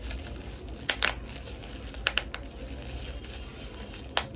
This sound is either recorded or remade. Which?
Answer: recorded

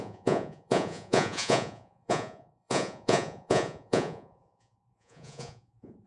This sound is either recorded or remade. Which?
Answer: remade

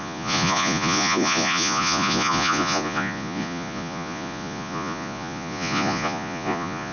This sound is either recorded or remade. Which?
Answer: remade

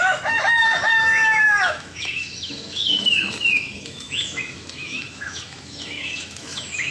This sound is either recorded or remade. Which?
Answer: remade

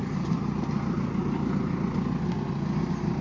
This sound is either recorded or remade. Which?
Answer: recorded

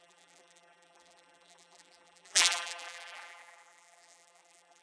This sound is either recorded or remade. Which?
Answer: remade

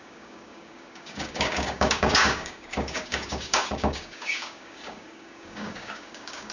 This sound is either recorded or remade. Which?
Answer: remade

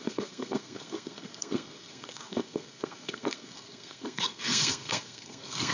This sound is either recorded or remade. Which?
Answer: remade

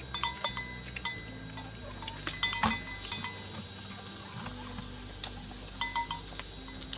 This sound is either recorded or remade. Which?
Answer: recorded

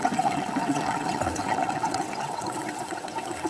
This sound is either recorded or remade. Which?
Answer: remade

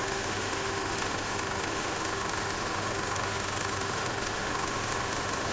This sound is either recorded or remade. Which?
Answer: remade